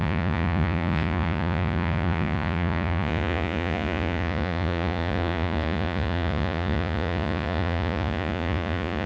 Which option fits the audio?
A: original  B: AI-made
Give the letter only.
B